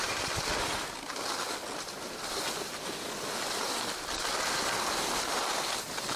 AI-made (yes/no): no